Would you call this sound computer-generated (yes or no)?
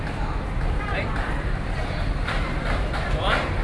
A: yes